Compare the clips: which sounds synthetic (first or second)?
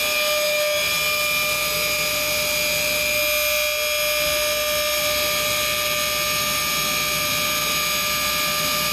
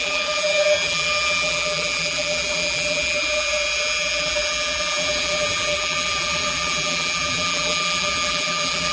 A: second